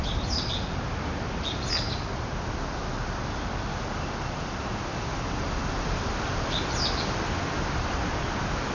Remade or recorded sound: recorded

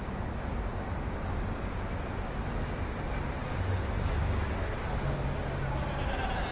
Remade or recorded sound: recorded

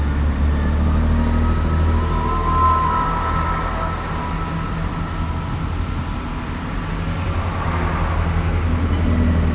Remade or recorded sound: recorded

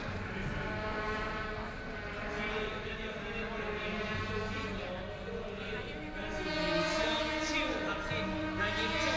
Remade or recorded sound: recorded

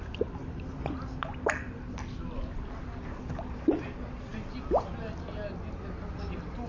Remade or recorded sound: recorded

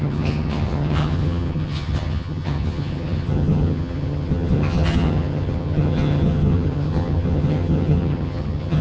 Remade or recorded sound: remade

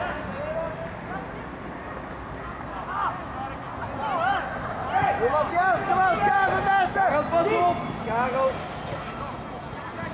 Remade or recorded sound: recorded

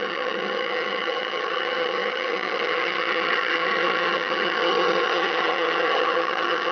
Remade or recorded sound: remade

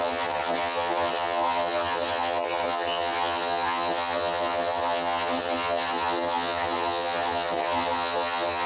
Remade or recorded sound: remade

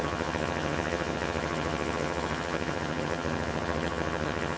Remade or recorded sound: remade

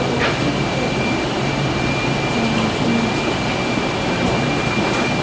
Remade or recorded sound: recorded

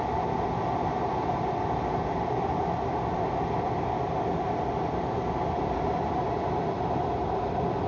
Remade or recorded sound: recorded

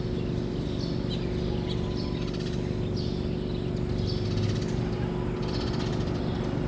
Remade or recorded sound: recorded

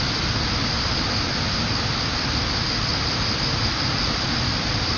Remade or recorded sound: recorded